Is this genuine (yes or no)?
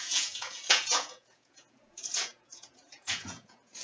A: no